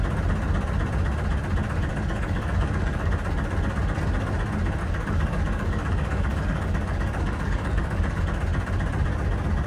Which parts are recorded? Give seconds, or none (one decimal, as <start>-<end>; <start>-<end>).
0.0-1.9; 3.1-4.8; 8.2-9.7